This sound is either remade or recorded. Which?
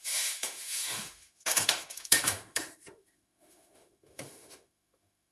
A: remade